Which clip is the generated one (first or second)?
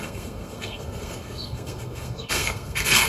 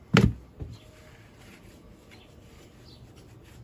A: first